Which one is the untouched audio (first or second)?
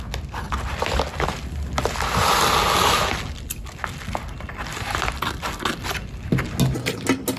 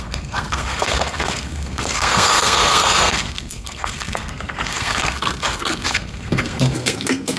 first